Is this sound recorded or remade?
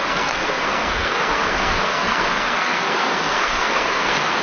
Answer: remade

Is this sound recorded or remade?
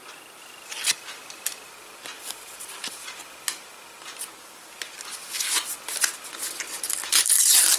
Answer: recorded